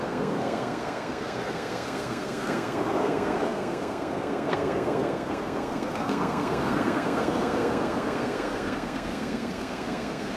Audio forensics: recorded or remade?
remade